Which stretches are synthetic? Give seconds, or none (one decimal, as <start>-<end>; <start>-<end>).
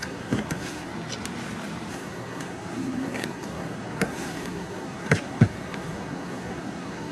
0.0-0.9; 1.9-7.1